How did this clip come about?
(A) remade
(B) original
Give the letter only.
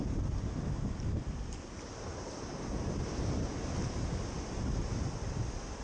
B